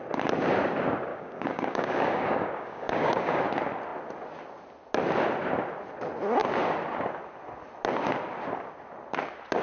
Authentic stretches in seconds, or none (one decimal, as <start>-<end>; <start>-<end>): 0.0-1.1; 3.4-9.6